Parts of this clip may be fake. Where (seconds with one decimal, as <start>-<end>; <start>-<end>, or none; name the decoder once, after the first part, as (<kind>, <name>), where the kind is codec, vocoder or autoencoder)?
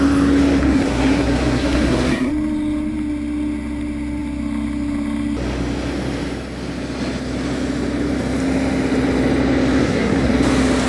0.6-2.3 (codec, SNAC); 9.8-10.3